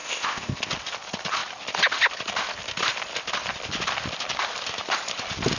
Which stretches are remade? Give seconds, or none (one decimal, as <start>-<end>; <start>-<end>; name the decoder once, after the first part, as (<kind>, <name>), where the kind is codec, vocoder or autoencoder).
0.0-0.7 (codec, ZipCodec)